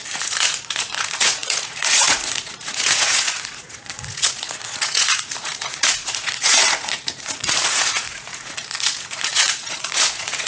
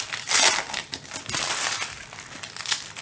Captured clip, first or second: second